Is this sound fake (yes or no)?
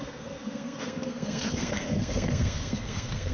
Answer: yes